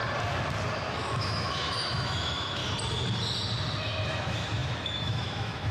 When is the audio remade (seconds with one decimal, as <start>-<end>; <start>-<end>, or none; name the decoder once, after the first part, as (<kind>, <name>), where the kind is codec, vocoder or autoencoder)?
0.9-2.6 (autoencoder, DAC-VAE); 4.1-5.7